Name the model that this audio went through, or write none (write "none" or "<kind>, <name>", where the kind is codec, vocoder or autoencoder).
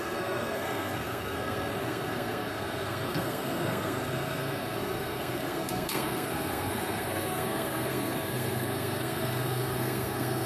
codec, SNAC